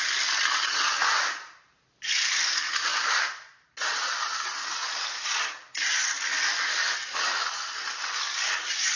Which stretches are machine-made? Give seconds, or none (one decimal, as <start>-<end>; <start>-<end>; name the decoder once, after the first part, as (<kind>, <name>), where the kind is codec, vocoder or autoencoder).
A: none